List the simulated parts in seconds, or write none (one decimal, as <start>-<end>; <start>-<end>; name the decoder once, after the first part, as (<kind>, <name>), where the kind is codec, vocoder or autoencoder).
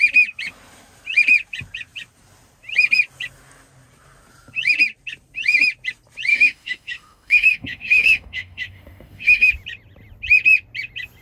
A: 6.3-9.5 (autoencoder, DAC-VAE)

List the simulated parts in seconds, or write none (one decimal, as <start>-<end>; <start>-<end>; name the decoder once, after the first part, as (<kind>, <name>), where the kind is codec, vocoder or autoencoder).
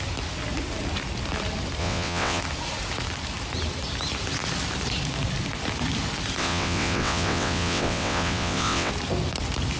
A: 1.8-2.4 (vocoder, WaveNeXt); 6.4-8.9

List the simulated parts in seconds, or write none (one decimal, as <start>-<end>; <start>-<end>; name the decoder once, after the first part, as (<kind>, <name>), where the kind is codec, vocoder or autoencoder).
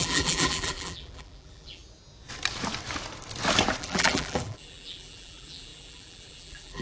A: 0.0-1.8 (vocoder, BigVGAN v2); 3.8-6.8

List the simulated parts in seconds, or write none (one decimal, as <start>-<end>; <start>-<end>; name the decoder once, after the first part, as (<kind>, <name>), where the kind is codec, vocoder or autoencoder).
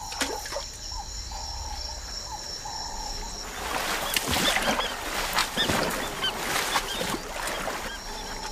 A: none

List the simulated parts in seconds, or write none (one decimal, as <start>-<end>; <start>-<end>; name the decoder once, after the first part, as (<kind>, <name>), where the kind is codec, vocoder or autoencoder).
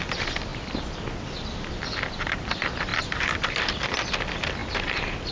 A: 0.0-0.5 (vocoder, BigVGAN v2); 2.1-4.6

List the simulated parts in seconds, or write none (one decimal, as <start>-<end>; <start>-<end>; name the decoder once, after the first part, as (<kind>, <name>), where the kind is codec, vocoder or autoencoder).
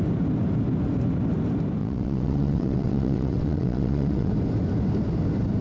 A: 1.8-4.3 (vocoder, WaveNeXt)